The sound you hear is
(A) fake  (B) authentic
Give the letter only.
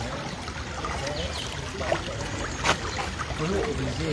B